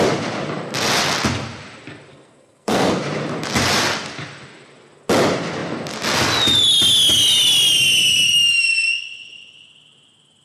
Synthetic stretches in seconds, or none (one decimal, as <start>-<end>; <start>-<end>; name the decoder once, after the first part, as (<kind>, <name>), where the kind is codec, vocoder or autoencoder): 2.1-3.0 (codec, SNAC)

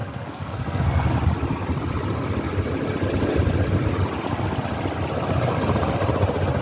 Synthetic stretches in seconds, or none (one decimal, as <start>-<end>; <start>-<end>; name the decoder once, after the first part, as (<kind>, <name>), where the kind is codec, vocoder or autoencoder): 0.0-1.1 (codec, SNAC)

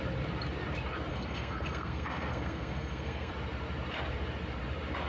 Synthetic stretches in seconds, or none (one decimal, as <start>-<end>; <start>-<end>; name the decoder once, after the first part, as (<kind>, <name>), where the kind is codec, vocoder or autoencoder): 1.1-3.3 (codec, SNAC)

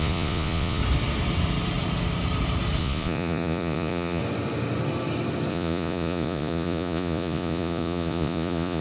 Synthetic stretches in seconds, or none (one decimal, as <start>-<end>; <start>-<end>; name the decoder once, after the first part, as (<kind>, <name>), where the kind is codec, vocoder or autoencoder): 0.0-0.8 (vocoder, Vocos); 2.8-4.2; 5.5-8.8

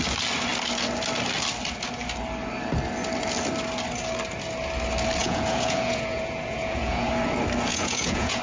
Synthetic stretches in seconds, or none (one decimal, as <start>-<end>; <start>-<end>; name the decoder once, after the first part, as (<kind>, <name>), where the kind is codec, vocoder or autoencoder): 5.2-7.1 (vocoder, Vocos); 7.7-8.4

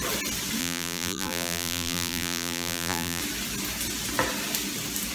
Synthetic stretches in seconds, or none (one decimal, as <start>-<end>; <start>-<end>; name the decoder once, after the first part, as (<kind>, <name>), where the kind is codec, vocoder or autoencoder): 0.6-3.2 (vocoder, BigVGAN v2)

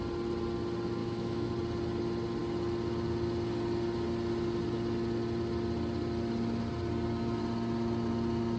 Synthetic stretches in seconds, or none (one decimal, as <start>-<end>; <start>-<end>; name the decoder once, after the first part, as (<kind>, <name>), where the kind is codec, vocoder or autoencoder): 1.0-1.5 (autoencoder, DAC-VAE)

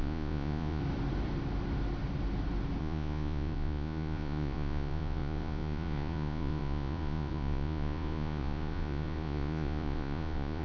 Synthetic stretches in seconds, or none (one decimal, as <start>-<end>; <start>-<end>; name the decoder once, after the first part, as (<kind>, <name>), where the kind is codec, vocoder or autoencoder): 0.0-0.8 (vocoder, Vocos); 2.8-10.6